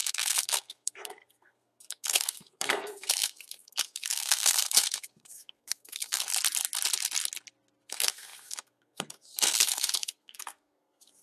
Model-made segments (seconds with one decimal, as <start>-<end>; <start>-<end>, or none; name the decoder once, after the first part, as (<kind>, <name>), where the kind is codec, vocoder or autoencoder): 0.0-6.3 (codec, SNAC); 7.9-11.2